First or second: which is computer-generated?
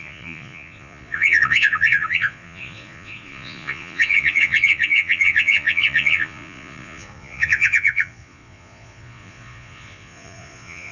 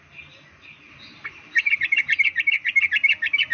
first